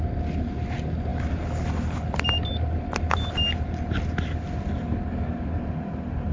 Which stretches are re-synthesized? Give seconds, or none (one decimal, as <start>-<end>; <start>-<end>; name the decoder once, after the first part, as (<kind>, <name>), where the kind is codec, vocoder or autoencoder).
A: none